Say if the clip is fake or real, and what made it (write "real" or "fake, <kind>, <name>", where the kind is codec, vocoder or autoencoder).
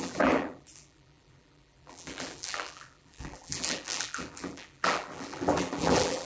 fake, vocoder, BigVGAN v2